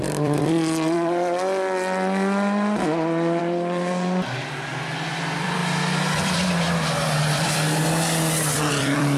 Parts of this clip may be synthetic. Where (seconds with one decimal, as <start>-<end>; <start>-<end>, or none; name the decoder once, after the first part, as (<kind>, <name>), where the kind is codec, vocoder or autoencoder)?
0.0-1.4 (vocoder, BigVGAN v2); 3.4-5.6; 8.7-9.2